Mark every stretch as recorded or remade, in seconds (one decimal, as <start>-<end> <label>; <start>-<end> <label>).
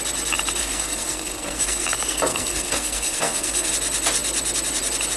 0.0-0.6 recorded; 0.6-3.7 remade; 3.7-5.2 recorded